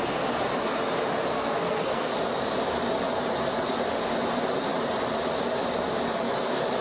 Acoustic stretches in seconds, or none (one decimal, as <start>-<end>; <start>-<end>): 0.0-1.3; 2.1-6.8